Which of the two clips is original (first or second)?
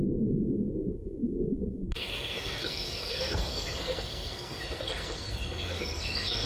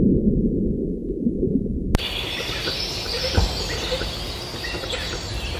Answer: second